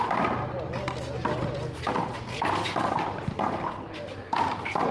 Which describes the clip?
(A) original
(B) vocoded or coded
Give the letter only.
A